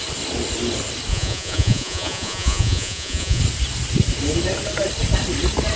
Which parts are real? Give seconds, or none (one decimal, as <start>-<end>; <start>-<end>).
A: 0.0-1.1; 3.4-5.8